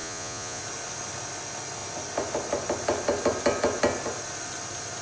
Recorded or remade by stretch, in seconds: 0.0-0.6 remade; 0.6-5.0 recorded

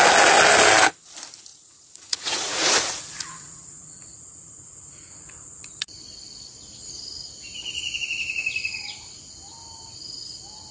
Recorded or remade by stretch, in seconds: 0.0-1.5 recorded; 1.5-6.0 remade; 6.0-10.7 recorded

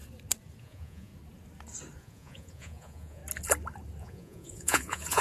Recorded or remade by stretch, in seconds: 0.0-0.6 recorded; 0.6-1.1 remade; 1.1-2.0 recorded; 2.0-3.2 remade; 3.2-4.0 recorded; 4.0-5.2 remade

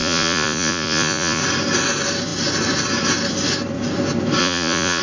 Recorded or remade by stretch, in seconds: 0.0-1.4 remade; 1.4-4.4 recorded; 4.4-5.0 remade

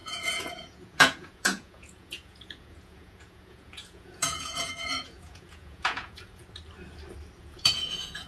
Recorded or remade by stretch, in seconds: 0.0-6.4 remade; 6.4-7.4 recorded; 7.4-8.3 remade